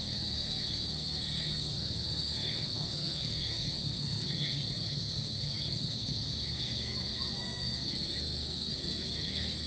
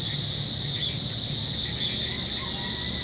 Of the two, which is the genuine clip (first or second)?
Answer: second